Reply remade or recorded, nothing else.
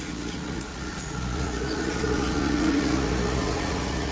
remade